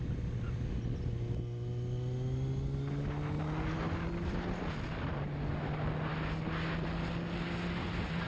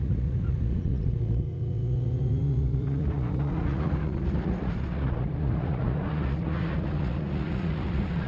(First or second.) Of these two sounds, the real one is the first